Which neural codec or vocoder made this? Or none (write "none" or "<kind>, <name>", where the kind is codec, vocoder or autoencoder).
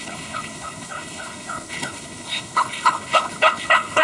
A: codec, HILCodec